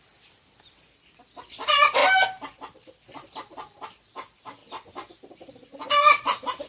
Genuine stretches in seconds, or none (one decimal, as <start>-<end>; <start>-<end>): 2.0-2.6; 4.6-5.3